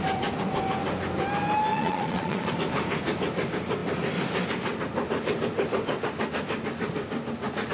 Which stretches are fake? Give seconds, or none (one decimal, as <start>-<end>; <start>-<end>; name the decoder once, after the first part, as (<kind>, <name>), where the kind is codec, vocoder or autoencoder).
1.7-2.5 (vocoder, Vocos)